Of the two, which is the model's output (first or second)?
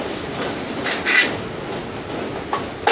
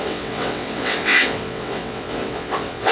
second